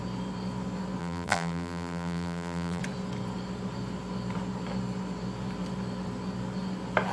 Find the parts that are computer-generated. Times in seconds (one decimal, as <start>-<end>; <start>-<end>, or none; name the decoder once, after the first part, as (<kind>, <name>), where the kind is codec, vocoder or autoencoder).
1.0-2.8 (vocoder, BigVGAN v2)